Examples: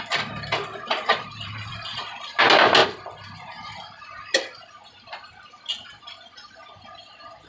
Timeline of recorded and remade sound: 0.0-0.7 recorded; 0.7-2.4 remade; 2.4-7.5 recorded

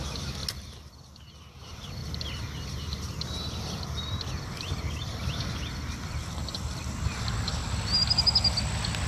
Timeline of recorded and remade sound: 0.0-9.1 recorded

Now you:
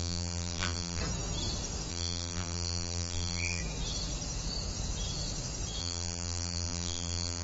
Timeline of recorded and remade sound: 0.0-1.0 remade; 1.0-1.9 recorded; 1.9-3.6 remade; 3.6-5.8 recorded; 5.8-7.4 remade

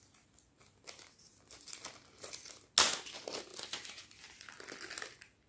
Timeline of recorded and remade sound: 0.0-3.5 recorded; 3.5-4.0 remade; 4.0-5.5 recorded

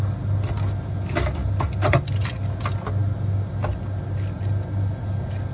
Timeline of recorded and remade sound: 0.0-5.5 recorded